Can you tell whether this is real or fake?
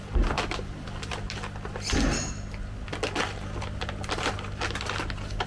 real